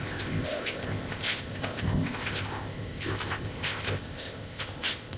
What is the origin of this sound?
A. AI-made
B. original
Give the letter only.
A